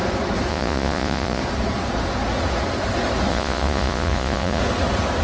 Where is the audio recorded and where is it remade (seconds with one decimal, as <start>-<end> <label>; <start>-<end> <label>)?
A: 0.0-0.5 recorded; 0.5-1.4 remade; 1.4-3.3 recorded; 3.3-4.6 remade; 4.6-5.2 recorded